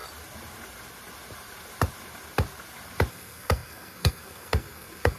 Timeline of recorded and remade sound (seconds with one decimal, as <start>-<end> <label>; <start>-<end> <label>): 0.0-3.1 recorded; 3.1-5.2 remade